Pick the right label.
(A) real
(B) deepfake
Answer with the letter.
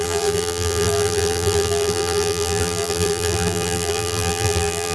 B